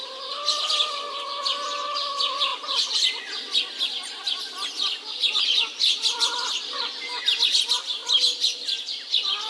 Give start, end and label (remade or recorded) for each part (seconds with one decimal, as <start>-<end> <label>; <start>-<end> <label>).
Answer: 0.0-9.5 recorded